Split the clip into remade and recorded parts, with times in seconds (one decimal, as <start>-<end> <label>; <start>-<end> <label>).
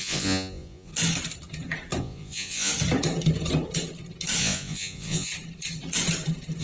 0.0-0.9 remade; 0.9-2.0 recorded; 2.0-2.7 remade; 2.7-4.4 recorded; 4.4-5.3 remade; 5.3-6.6 recorded